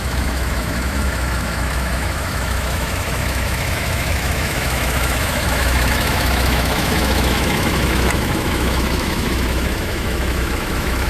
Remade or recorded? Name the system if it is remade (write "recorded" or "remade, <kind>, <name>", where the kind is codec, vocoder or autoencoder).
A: remade, autoencoder, DAC-VAE